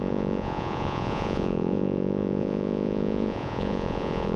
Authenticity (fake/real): fake